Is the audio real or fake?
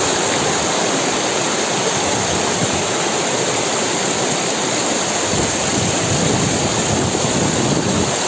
fake